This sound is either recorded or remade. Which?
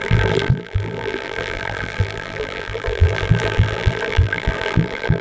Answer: remade